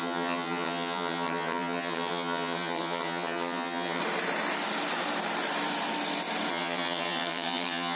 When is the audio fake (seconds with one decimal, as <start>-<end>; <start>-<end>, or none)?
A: 0.0-4.0; 6.5-8.0